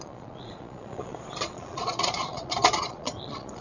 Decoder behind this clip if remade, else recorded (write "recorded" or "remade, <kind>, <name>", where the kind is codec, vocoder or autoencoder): remade, vocoder, Vocos